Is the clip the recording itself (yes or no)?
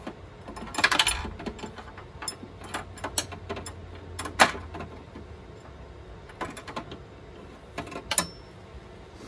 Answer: yes